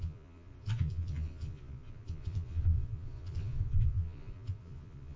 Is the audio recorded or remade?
remade